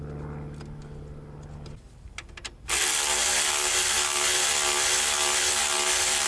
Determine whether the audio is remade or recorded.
recorded